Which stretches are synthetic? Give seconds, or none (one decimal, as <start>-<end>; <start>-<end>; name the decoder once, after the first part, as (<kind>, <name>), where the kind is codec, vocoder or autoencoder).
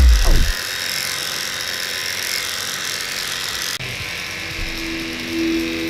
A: none